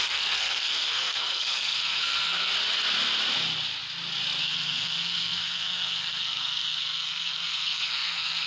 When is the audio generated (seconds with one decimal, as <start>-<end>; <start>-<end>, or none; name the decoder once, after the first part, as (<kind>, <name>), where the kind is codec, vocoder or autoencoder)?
0.0-2.5 (codec, SNAC); 4.4-8.5